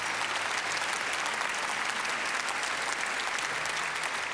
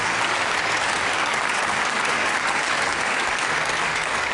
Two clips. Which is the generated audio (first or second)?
second